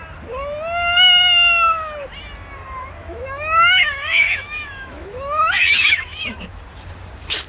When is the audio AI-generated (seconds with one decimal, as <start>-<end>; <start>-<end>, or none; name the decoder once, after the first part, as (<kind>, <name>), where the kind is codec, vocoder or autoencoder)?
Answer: 3.0-6.6 (autoencoder, DAC-VAE)